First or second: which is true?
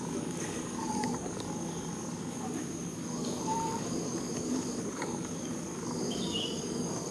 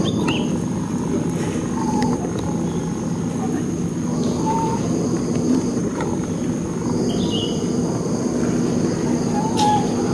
second